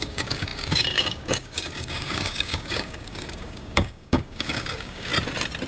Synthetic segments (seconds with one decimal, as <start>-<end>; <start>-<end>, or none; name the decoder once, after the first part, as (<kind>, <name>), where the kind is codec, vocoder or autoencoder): 0.0-5.1 (codec, DAC)